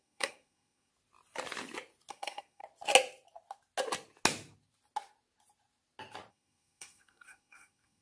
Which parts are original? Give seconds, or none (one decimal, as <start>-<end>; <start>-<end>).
0.9-2.1; 2.6-6.3